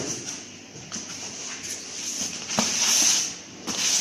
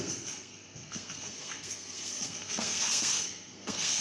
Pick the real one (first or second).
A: first